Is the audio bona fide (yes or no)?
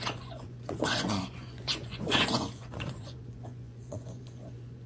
no